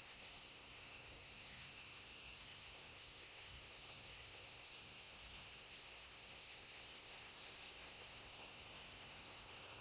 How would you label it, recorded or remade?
remade